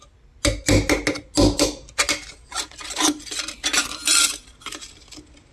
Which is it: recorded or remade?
recorded